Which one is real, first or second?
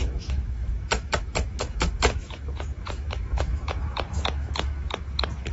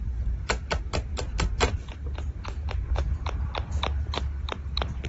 second